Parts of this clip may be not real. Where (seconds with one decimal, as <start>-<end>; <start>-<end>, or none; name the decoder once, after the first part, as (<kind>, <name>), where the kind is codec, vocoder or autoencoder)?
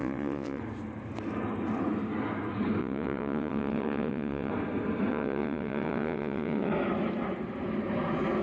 0.0-0.6 (vocoder, WaveNeXt); 2.8-4.5; 5.1-6.7